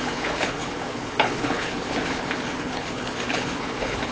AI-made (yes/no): yes